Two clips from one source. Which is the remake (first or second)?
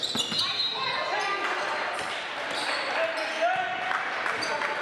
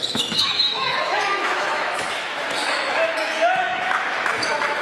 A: second